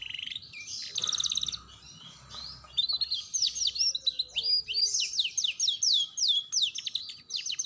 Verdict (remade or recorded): recorded